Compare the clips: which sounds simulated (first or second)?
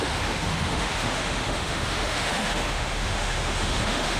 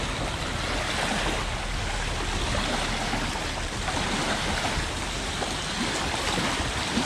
first